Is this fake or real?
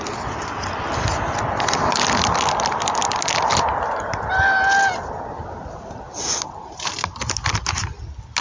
real